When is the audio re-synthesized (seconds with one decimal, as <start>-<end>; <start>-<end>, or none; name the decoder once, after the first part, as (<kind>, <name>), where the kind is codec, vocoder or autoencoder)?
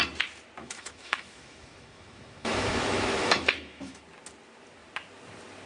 0.6-4.0 (autoencoder, DAC-VAE)